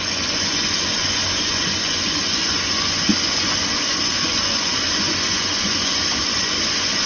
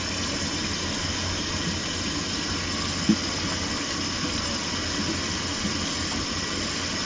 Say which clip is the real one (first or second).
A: second